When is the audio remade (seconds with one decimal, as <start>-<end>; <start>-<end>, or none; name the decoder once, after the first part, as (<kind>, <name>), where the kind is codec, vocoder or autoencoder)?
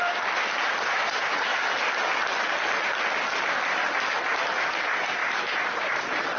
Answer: 0.0-1.5 (vocoder, BigVGAN v2); 4.6-6.4